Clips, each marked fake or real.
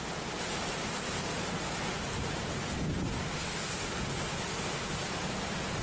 real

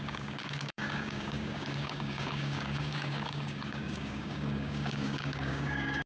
fake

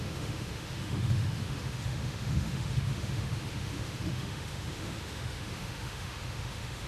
fake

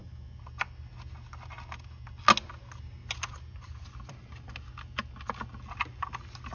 real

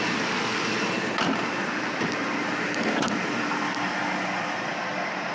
real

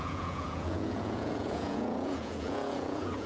fake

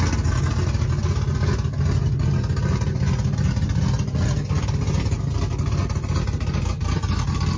real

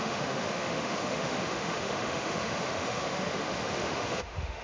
fake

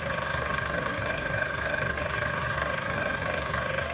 fake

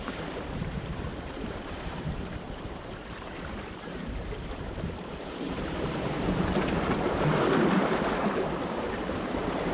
fake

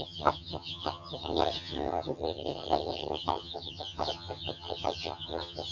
fake